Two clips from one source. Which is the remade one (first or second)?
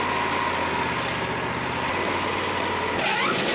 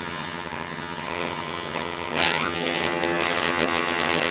second